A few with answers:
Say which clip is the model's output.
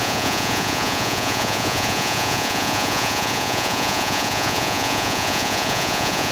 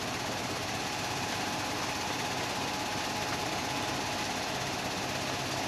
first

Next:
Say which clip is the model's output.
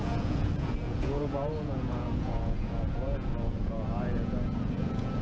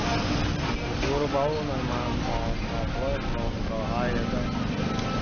first